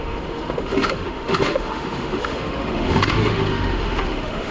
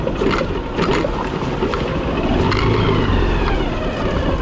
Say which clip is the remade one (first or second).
first